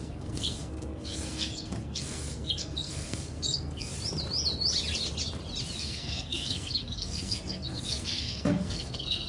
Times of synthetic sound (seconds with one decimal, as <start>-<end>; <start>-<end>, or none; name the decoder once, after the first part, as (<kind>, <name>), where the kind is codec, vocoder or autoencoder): 0.0-3.9 (codec, SNAC); 5.8-9.3

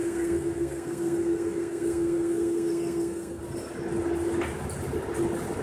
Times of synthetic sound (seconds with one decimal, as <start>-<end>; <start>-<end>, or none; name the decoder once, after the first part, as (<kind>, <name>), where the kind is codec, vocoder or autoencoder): 0.0-3.4 (codec, SNAC)

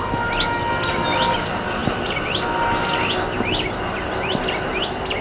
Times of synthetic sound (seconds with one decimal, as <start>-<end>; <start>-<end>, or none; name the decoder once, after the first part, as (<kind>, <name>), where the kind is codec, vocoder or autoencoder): none

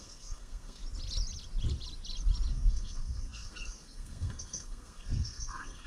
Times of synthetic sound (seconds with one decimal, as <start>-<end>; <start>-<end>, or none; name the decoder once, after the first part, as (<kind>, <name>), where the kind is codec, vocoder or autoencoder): 0.0-0.8 (codec, SNAC); 2.5-5.9

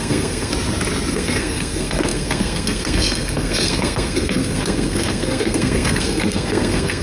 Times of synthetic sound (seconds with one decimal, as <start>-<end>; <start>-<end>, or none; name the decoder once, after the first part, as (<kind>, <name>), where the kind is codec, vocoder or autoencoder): 0.0-0.5 (codec, SNAC); 1.1-7.0

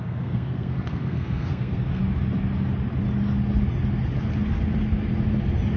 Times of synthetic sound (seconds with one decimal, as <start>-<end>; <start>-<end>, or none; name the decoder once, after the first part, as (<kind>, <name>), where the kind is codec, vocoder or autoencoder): 0.0-2.0 (codec, SNAC)

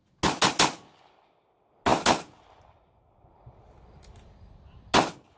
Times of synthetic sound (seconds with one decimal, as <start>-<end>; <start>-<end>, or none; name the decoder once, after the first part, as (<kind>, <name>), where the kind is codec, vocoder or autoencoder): none